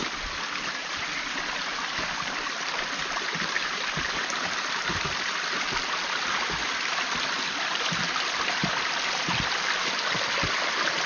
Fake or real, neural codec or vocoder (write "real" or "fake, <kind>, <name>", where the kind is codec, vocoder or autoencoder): real